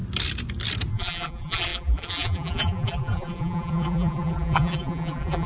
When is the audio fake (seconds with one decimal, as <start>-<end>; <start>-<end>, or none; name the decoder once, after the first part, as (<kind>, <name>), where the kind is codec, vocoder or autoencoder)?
0.9-5.5 (vocoder, BigVGAN v2)